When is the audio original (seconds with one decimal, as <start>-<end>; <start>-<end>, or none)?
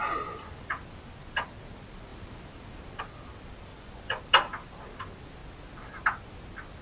0.0-3.7; 4.2-6.8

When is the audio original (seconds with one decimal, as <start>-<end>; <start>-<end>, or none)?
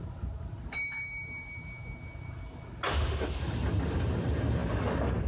0.0-5.3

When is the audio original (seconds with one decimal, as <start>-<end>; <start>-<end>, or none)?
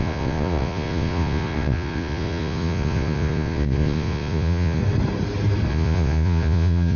4.8-5.7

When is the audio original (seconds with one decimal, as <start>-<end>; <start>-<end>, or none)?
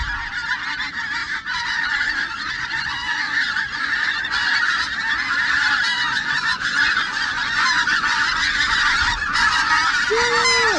0.0-1.2; 4.9-5.9; 9.7-10.8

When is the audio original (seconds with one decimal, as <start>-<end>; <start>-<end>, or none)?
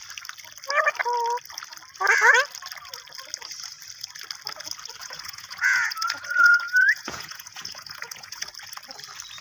0.0-5.0; 8.5-9.4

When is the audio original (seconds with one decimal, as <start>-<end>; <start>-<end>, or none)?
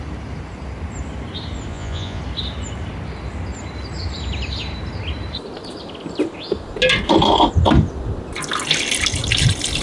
0.0-1.7; 2.2-9.8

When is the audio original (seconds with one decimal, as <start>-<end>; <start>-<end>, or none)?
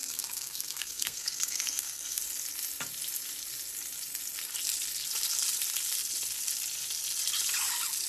2.2-8.1